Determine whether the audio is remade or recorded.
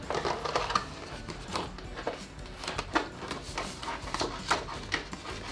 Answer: recorded